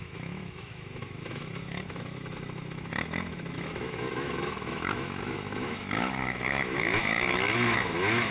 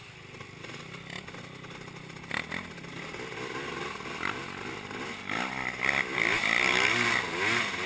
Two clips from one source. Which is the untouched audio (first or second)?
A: second